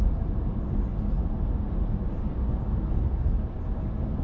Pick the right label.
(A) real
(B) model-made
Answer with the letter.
A